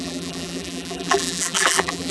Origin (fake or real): fake